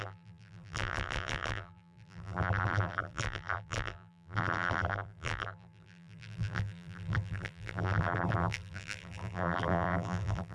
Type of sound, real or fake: fake